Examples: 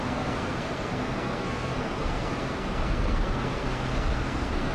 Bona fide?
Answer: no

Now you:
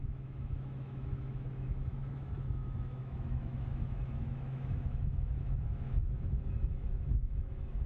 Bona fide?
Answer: no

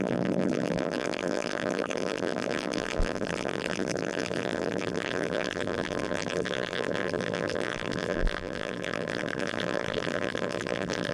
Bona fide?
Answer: no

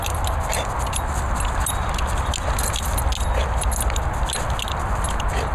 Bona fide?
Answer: yes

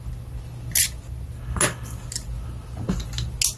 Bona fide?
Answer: yes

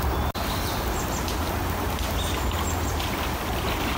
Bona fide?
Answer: yes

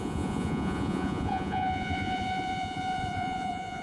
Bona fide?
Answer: no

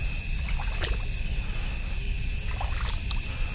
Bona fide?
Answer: yes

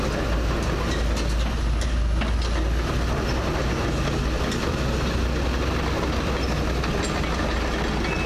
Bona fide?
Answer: yes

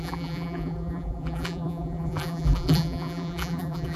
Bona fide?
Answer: no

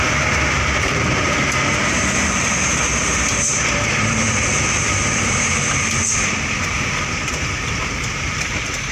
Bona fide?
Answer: no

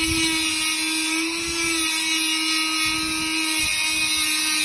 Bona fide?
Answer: yes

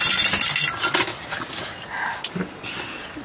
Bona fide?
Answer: yes